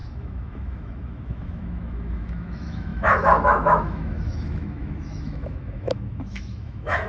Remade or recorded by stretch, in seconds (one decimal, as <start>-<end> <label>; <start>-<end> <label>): 0.0-7.1 remade